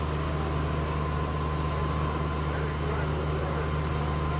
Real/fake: real